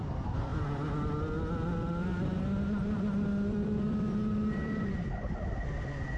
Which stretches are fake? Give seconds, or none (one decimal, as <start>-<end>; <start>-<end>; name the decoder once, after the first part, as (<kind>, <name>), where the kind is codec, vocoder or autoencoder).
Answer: 0.0-0.5 (vocoder, BigVGAN v2); 1.5-6.2